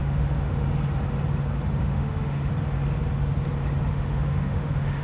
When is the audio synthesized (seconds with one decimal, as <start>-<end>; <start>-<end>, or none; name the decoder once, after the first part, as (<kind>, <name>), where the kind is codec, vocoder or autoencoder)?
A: 0.0-0.5 (autoencoder, DAC-VAE); 1.8-2.5; 3.9-5.0